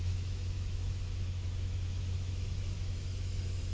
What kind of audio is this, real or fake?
fake